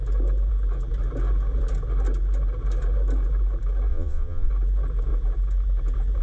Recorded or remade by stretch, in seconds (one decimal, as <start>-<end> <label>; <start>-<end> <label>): 0.0-3.9 recorded; 3.9-4.5 remade; 4.5-6.2 recorded